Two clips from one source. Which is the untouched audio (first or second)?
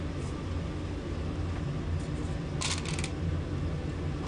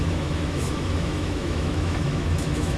first